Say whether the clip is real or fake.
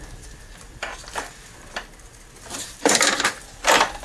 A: fake